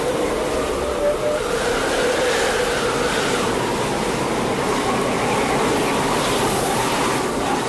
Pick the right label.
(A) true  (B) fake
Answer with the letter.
A